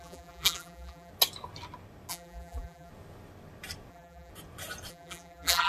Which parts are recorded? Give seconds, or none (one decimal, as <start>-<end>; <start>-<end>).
1.1-2.1; 2.9-3.9; 4.3-4.9